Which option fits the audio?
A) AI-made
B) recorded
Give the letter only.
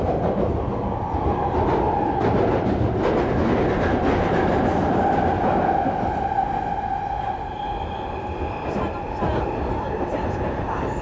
B